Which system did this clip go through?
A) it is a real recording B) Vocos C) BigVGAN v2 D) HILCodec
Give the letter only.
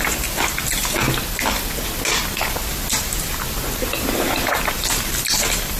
A